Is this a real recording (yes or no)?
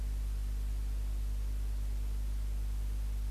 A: yes